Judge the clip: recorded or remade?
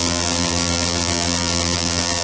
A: remade